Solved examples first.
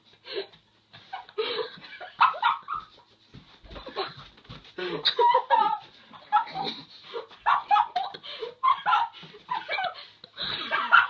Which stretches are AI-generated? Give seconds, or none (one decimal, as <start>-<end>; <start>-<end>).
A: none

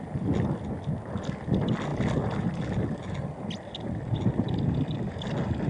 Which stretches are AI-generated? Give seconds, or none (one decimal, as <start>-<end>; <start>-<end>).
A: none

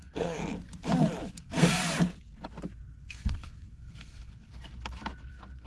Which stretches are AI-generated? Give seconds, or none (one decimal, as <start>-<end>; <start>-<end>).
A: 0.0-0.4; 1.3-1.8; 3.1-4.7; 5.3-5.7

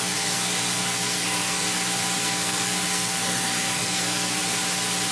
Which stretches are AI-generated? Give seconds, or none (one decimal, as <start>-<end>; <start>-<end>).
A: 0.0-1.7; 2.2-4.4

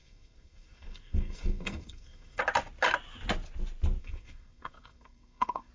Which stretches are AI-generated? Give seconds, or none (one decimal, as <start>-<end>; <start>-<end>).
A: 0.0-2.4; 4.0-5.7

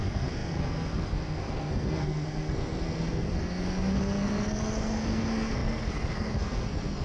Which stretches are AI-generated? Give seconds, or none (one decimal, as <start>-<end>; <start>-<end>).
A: 0.0-7.0

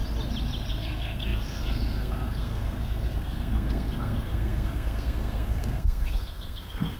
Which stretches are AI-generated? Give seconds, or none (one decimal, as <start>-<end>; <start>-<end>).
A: 0.7-7.0

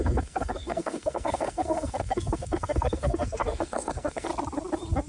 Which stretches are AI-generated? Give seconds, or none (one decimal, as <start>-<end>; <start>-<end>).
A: 0.0-4.3